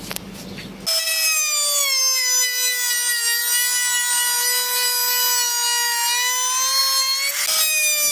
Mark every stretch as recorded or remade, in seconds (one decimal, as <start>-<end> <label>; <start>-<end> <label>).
0.0-8.1 recorded